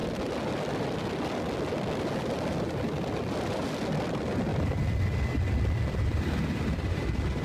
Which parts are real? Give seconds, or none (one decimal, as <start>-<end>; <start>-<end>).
0.0-7.4